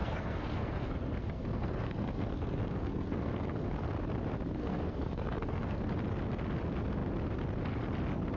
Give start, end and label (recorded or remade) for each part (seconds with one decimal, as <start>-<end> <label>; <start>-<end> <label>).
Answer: 0.0-3.9 remade; 3.9-4.6 recorded; 4.6-5.8 remade; 5.8-8.4 recorded